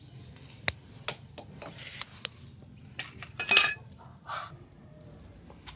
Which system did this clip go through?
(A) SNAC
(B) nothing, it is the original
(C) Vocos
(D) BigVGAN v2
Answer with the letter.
B